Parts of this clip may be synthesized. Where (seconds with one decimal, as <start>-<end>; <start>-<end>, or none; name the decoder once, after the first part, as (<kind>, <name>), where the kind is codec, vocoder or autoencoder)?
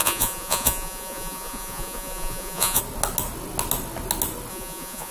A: 0.0-2.8 (vocoder, Vocos); 4.5-5.1